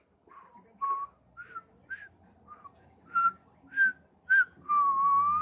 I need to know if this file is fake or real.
real